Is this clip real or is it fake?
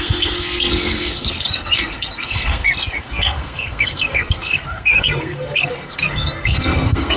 fake